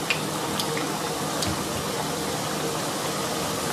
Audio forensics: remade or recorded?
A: recorded